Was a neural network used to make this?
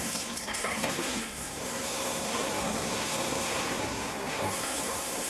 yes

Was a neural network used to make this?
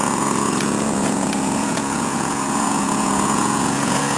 yes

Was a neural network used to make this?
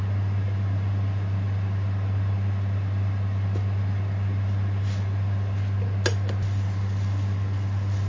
no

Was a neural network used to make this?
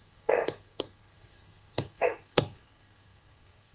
yes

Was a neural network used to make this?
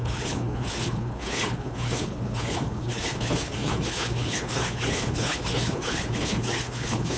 yes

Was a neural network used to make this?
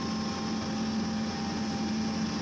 no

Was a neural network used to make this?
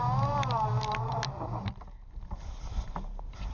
no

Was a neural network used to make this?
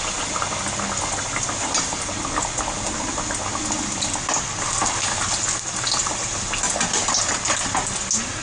no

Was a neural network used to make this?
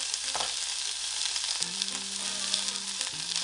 no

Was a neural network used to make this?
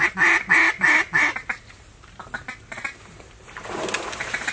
no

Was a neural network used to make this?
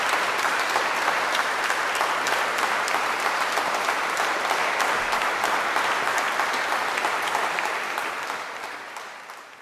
yes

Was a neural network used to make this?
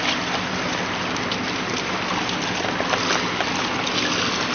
no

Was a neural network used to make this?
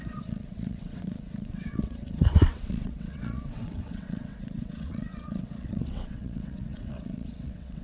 yes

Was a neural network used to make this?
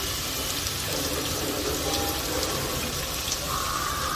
no